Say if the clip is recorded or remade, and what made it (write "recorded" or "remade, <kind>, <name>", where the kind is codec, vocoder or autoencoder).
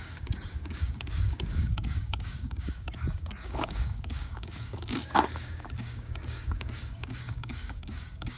remade, codec, DAC